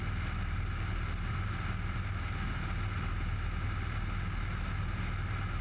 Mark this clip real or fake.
real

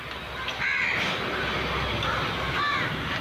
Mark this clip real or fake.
real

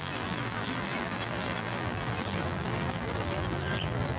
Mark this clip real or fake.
fake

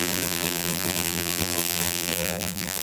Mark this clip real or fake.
fake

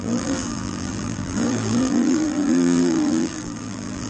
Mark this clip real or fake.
fake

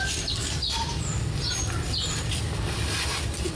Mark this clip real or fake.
fake